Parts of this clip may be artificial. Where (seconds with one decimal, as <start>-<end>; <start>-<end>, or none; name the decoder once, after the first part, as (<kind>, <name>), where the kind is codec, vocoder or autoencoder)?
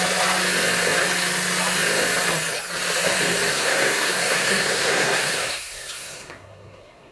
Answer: 3.5-7.1 (codec, SNAC)